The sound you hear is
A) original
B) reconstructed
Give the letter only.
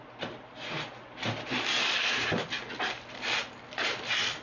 A